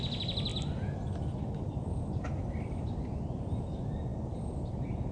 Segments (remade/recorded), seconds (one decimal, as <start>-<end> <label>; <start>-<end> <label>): 0.0-5.1 recorded